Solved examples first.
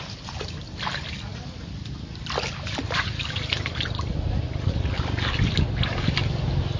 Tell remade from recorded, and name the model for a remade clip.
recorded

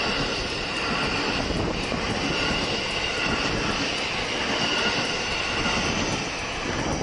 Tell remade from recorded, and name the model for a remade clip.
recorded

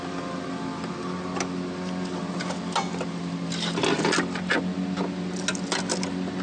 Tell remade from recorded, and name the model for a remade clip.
recorded